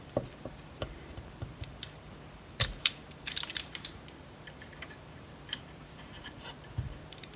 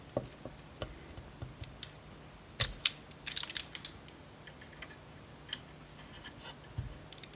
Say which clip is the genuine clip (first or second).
second